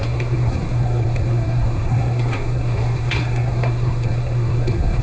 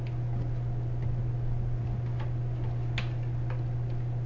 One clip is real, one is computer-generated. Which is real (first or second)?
second